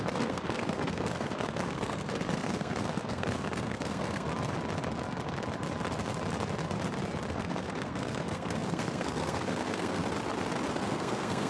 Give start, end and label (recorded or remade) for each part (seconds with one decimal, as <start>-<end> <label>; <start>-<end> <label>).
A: 0.0-4.3 remade; 4.3-7.3 recorded; 7.3-10.0 remade; 10.0-10.7 recorded; 10.7-11.5 remade